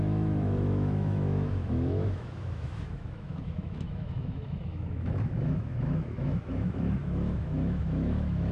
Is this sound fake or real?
fake